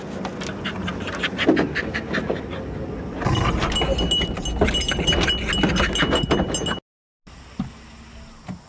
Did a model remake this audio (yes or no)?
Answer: no